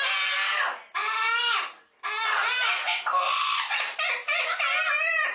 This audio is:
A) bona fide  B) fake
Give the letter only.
A